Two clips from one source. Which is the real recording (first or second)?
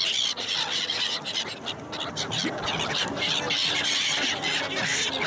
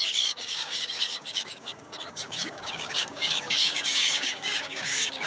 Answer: first